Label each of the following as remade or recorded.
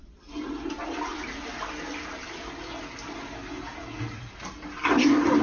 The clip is recorded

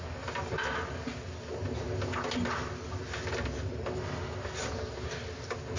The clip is recorded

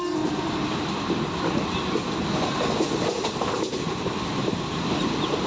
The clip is recorded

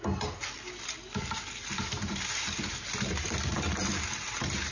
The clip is recorded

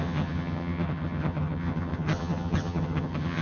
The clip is remade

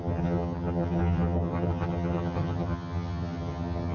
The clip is remade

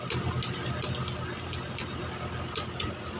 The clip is recorded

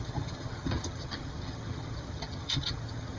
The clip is remade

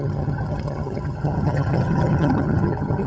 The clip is remade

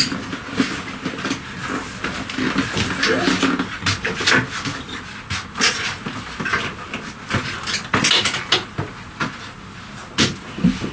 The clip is recorded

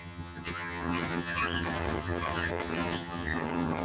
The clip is remade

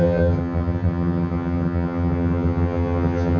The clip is remade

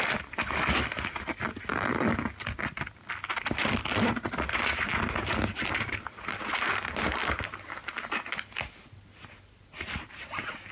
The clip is recorded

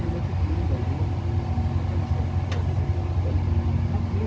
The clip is recorded